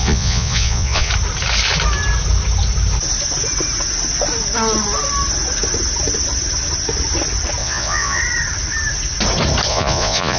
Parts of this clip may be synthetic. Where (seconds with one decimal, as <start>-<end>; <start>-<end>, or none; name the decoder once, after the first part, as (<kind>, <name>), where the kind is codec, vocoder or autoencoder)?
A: 0.0-1.1 (vocoder, Vocos); 7.6-8.2; 9.7-10.4